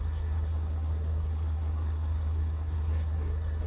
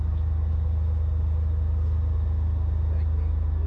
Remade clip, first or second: first